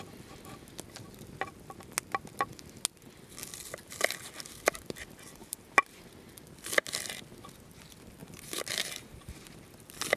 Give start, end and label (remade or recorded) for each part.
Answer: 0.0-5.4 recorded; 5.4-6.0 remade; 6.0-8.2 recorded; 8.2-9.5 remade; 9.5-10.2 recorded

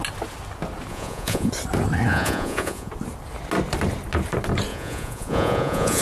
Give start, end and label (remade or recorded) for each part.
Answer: 0.0-0.9 recorded; 0.9-1.5 remade; 1.5-2.1 recorded; 2.1-2.9 remade; 2.9-4.7 recorded; 4.7-6.0 remade

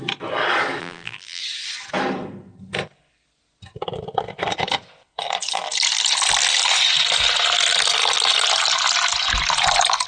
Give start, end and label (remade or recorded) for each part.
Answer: 0.0-0.8 recorded; 0.8-1.4 remade; 1.4-10.1 recorded